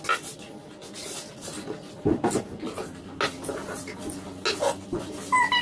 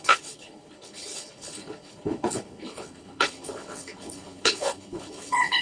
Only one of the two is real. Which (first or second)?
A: first